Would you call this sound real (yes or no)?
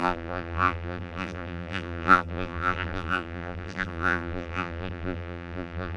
no